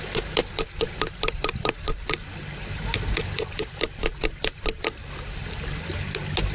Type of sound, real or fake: real